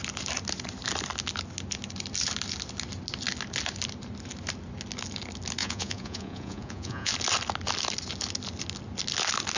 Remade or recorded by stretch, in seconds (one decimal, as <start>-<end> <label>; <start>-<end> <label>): 0.0-5.6 recorded; 5.6-7.1 remade; 7.1-9.6 recorded